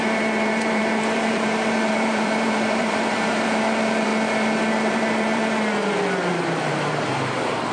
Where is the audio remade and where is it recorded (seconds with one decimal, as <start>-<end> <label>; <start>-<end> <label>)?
0.0-4.1 remade; 4.1-4.7 recorded; 4.7-5.4 remade; 5.4-6.3 recorded; 6.3-7.7 remade